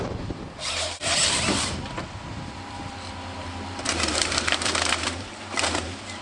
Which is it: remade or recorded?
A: remade